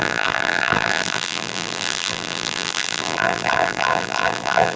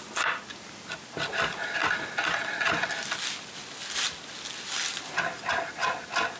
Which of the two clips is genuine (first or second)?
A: second